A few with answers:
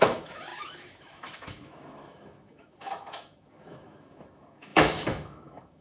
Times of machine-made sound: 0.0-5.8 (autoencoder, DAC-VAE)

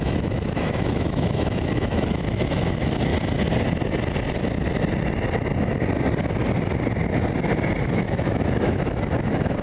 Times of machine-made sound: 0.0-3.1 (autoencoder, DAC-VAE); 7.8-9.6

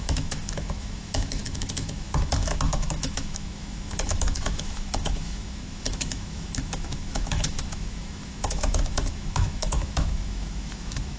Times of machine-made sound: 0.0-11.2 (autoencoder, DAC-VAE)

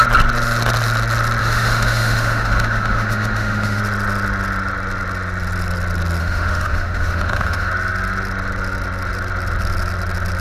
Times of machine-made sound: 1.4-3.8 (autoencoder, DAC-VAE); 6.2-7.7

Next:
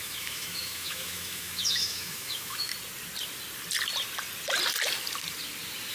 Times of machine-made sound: 0.0-2.7 (autoencoder, DAC-VAE)

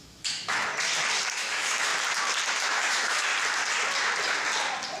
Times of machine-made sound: 0.0-0.7 (autoencoder, DAC-VAE); 1.3-1.9; 2.6-3.3

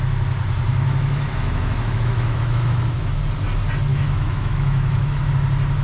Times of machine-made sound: 0.7-3.2 (autoencoder, DAC-VAE); 3.9-5.3

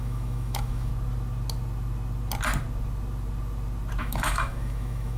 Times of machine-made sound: 0.0-0.9 (autoencoder, DAC-VAE); 4.0-5.2